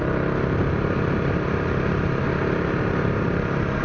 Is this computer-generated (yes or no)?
no